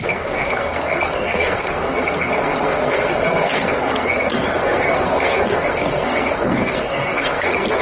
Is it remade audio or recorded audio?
remade